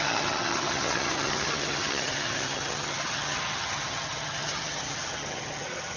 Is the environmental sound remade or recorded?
remade